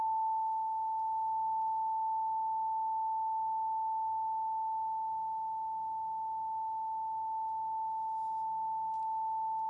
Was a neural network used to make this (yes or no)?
no